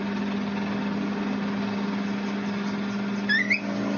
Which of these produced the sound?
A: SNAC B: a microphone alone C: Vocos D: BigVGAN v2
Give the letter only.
B